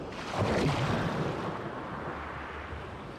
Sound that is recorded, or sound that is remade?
recorded